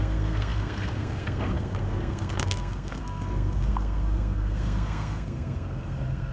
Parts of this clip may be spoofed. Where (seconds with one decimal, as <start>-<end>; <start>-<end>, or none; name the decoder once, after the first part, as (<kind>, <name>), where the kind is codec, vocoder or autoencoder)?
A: 0.0-6.3 (codec, SNAC)